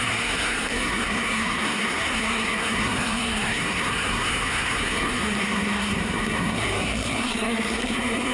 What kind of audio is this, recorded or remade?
remade